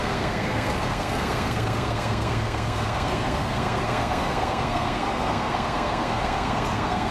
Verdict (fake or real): fake